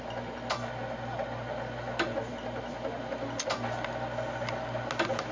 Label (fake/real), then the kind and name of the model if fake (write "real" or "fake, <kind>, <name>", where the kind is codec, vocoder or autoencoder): real